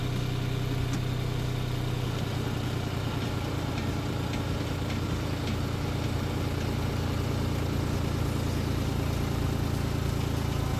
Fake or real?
real